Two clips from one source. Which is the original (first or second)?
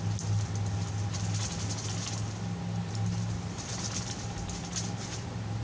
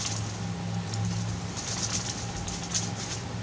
second